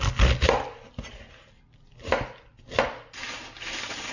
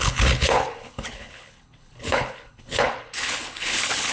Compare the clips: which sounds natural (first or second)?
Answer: first